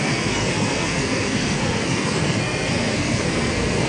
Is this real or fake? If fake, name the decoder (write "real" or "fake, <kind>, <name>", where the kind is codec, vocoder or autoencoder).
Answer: fake, codec, SNAC